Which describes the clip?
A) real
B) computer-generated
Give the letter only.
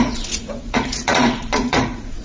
B